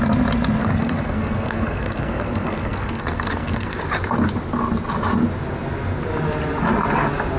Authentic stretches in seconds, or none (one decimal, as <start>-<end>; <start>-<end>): 0.0-0.6; 3.8-7.4